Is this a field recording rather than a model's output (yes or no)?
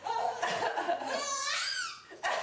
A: no